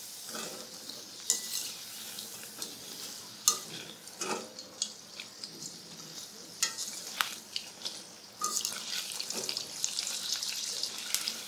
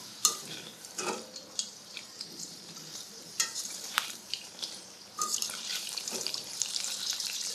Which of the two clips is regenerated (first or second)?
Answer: second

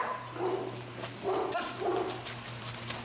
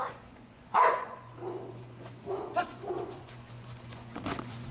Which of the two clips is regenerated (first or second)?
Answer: second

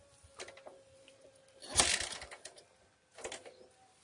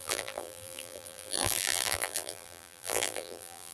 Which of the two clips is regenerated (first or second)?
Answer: second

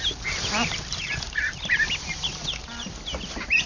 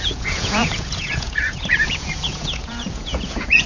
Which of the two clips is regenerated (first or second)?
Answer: second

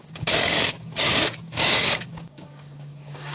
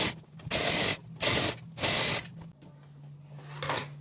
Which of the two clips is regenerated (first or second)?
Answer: first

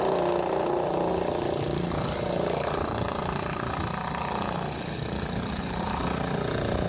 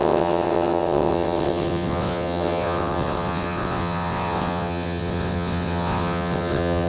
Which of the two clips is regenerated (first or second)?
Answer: second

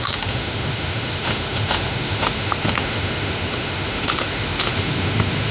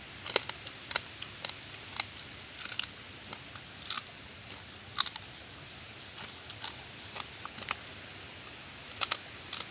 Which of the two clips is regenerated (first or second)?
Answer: first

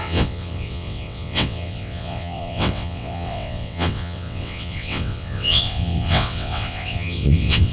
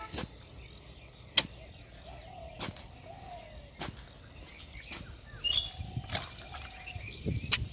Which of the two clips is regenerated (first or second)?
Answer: first